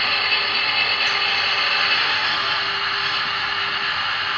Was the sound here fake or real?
real